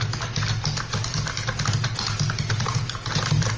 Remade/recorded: recorded